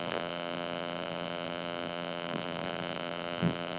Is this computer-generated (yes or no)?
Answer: yes